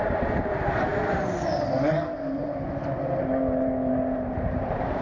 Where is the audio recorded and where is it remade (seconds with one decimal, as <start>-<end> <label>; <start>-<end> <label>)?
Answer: 0.0-0.9 remade; 0.9-3.9 recorded; 3.9-5.0 remade